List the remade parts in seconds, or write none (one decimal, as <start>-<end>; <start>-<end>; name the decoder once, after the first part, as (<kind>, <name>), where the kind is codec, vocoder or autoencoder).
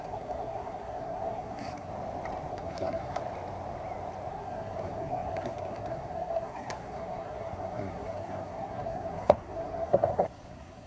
0.0-1.9 (codec, SNAC); 2.5-3.2; 4.3-10.9